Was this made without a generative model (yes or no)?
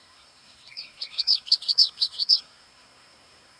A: no